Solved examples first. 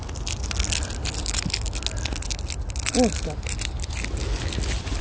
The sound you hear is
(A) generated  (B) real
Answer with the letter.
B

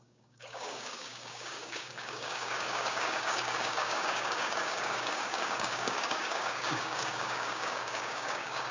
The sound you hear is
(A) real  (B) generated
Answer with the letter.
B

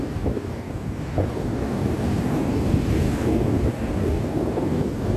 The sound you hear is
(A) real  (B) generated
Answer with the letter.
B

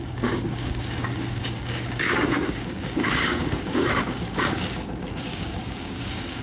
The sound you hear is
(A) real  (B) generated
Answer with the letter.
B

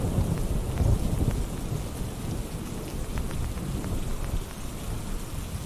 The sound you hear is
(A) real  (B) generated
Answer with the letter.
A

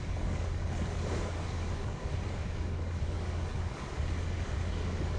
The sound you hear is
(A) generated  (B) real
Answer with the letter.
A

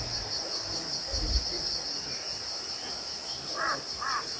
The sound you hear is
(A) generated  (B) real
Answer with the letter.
B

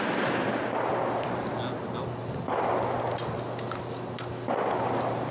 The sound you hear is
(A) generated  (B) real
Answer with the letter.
B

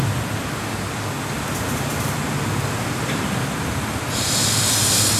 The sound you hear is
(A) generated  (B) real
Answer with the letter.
B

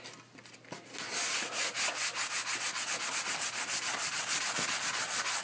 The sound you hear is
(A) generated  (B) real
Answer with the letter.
B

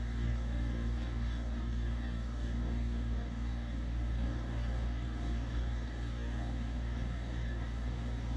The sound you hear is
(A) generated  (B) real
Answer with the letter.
A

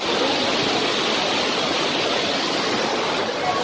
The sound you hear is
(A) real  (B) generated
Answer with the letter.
A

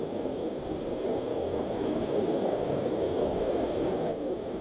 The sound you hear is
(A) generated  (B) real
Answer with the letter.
A